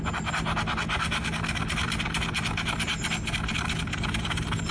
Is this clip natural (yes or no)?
yes